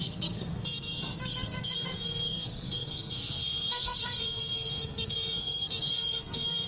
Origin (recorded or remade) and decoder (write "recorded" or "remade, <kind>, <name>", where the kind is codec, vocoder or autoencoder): remade, codec, SNAC